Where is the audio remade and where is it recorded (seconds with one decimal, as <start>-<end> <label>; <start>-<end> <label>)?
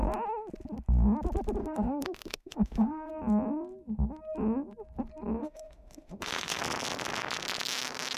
0.0-1.6 recorded; 1.6-3.1 remade; 3.1-5.4 recorded; 5.4-6.6 remade; 6.6-8.2 recorded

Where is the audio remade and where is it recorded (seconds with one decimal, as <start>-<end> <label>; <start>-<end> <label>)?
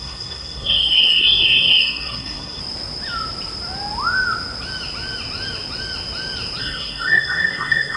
0.0-2.6 remade; 2.6-6.6 recorded; 6.6-8.0 remade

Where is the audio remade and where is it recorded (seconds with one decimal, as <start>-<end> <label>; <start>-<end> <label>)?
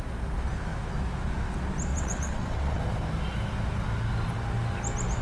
0.0-1.9 recorded; 1.9-2.8 remade; 2.8-5.2 recorded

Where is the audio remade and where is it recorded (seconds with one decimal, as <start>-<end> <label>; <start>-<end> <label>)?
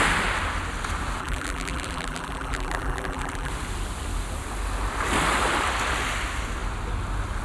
0.0-1.2 recorded; 1.2-3.5 remade; 3.5-7.4 recorded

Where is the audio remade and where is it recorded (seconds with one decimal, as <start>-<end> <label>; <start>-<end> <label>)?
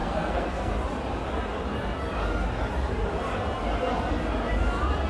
0.0-0.7 remade; 0.7-5.1 recorded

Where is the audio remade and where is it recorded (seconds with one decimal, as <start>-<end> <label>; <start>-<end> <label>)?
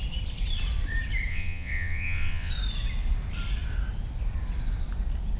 0.0-1.3 recorded; 1.3-2.5 remade; 2.5-5.4 recorded